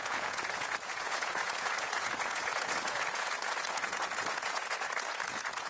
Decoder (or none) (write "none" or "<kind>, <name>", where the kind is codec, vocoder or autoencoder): vocoder, Vocos